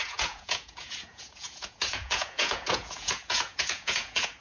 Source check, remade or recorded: remade